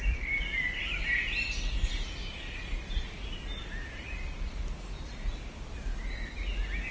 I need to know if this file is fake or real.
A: real